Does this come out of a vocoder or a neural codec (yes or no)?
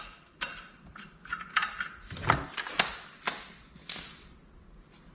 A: no